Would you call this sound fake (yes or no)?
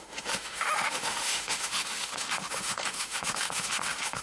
yes